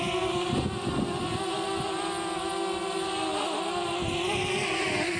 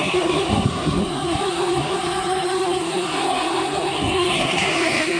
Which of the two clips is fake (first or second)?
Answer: second